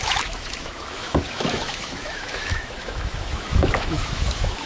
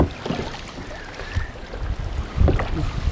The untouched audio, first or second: second